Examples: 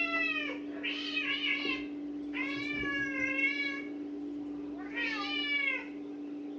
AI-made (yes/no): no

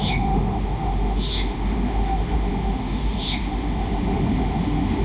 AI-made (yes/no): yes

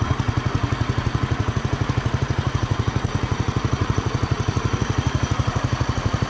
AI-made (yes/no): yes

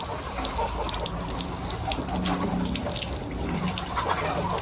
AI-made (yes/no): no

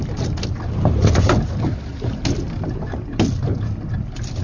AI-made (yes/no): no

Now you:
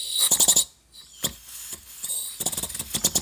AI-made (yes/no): no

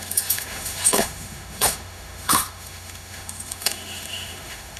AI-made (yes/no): yes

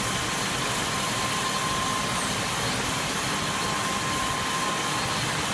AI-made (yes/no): no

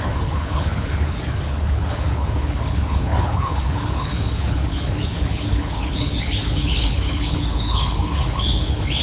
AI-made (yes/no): yes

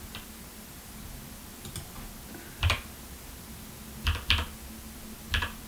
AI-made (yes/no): no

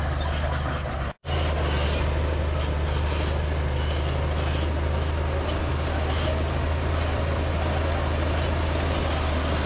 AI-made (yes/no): no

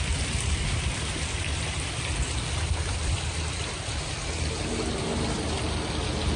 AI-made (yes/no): no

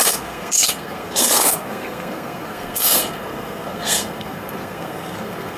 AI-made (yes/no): yes